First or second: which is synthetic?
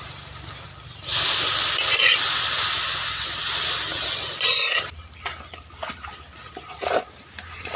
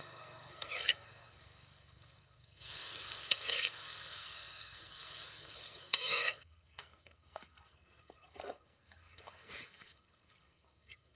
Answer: second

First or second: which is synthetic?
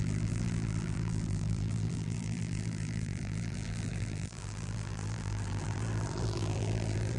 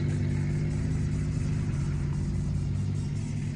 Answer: first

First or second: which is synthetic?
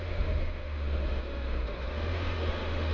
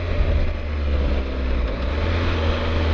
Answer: first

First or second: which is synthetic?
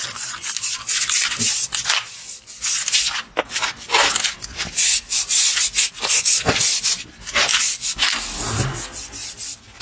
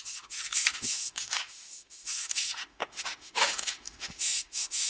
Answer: second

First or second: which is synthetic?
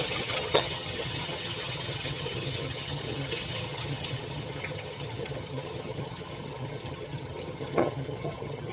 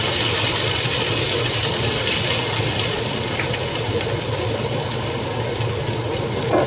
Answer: first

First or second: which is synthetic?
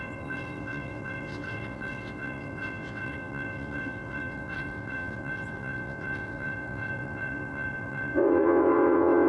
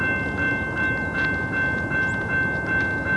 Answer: first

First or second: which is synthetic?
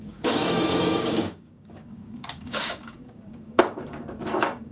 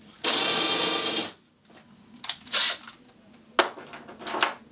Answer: first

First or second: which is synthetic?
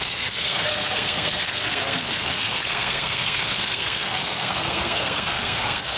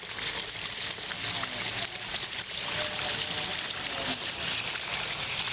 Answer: first